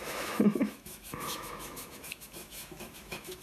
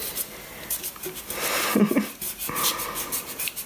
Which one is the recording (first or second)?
second